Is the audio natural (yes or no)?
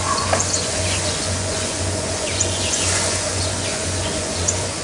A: no